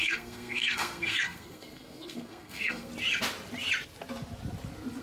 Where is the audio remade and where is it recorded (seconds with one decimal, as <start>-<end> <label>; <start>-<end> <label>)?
0.0-2.9 remade; 2.9-5.0 recorded